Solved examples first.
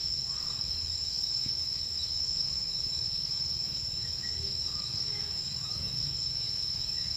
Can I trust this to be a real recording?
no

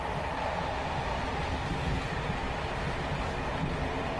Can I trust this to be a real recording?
yes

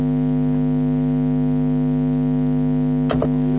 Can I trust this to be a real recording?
yes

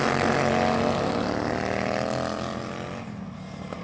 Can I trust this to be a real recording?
yes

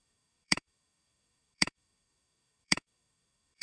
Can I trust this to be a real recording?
no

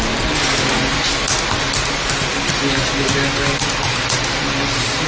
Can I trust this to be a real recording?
yes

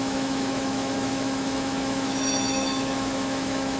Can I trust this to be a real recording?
no